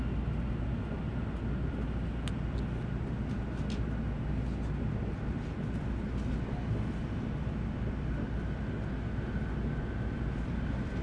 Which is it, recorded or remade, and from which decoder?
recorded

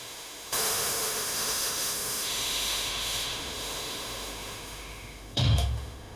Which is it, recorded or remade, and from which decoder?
remade, autoencoder, DAC-VAE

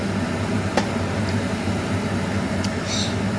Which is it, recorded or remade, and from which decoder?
recorded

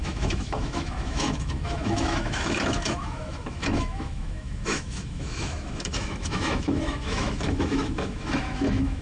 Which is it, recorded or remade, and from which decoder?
remade, autoencoder, DAC-VAE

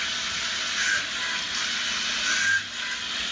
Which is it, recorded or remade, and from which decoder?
recorded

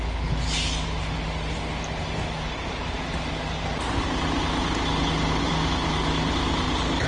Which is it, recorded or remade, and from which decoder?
recorded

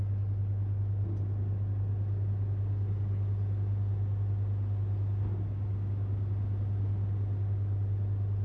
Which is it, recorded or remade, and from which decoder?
recorded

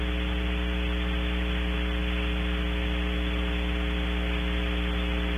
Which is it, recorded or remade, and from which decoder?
recorded